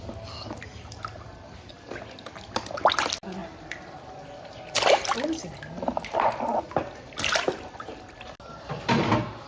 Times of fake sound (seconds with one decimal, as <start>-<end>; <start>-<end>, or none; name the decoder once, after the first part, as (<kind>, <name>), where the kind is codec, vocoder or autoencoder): 0.7-1.7 (vocoder, BigVGAN v2)